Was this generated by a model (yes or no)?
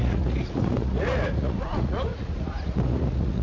yes